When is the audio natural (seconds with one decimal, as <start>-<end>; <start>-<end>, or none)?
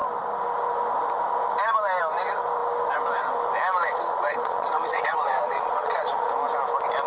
0.0-3.8; 6.3-7.1